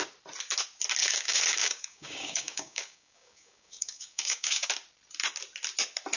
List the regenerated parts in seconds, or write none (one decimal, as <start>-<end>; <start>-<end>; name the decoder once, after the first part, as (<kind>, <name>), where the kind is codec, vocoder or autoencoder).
1.0-4.7 (codec, DAC)